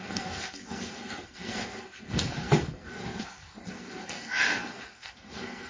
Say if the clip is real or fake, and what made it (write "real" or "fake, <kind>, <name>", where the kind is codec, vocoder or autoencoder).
fake, codec, SNAC